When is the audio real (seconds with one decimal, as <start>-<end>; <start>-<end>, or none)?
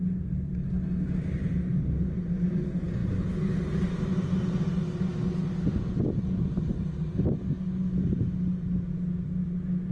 0.0-9.9